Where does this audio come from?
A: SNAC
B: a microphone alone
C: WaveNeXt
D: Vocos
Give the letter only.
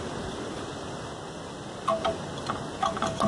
B